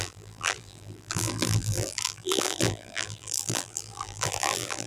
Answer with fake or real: fake